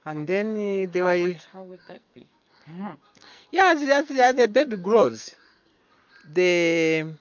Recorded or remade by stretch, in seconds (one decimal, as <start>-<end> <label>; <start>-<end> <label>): 0.0-3.5 remade; 3.5-4.0 recorded; 4.0-5.8 remade; 5.8-7.2 recorded

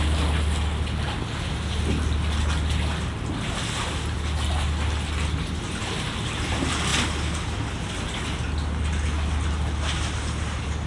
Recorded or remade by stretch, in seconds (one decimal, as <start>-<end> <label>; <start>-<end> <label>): 0.0-10.9 recorded

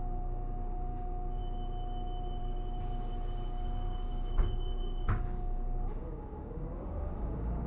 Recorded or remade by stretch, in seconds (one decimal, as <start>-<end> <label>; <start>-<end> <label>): 0.0-1.4 remade; 1.4-2.4 recorded; 2.4-7.7 remade

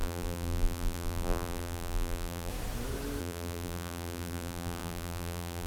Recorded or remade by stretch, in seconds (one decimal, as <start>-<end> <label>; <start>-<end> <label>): 0.0-2.5 remade; 2.5-3.2 recorded; 3.2-5.7 remade